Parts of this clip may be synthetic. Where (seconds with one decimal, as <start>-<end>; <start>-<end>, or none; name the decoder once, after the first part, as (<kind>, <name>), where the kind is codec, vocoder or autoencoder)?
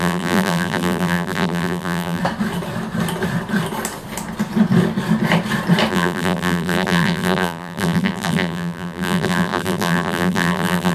0.0-2.2 (vocoder, BigVGAN v2); 5.9-10.9